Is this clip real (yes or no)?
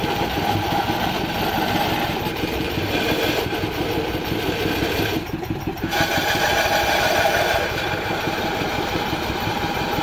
no